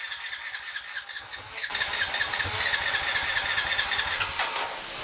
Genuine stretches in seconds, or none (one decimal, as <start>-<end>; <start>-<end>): 0.0-5.0